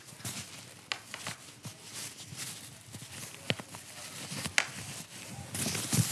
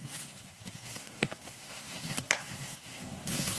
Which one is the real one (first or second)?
first